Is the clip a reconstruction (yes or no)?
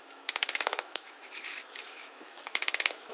yes